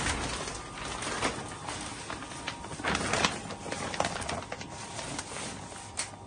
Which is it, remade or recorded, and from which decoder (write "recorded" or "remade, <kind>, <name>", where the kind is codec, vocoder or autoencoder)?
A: recorded